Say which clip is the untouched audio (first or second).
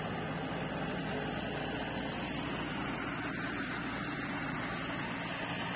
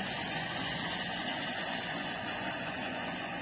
first